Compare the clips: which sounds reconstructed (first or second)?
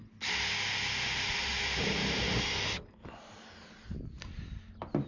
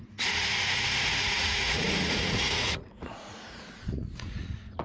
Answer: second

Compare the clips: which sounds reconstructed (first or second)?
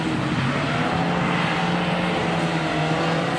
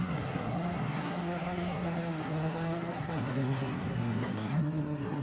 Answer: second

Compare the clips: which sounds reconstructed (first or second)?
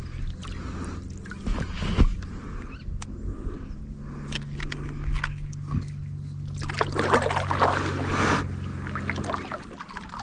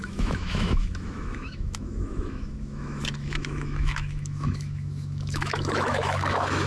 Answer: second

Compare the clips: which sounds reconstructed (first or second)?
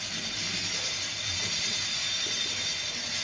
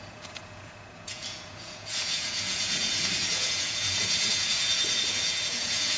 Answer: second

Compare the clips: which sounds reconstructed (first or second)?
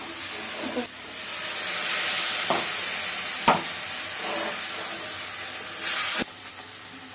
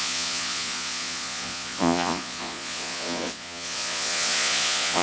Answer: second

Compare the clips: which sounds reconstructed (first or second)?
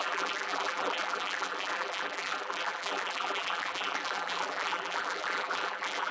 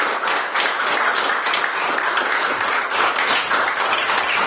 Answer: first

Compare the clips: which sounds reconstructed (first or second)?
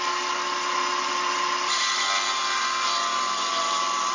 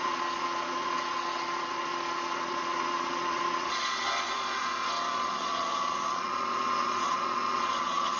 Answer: second